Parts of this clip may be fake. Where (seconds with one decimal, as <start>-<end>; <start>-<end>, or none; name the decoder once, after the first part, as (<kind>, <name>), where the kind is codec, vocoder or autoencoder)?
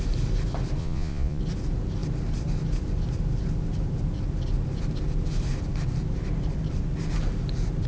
0.8-1.4 (vocoder, Vocos)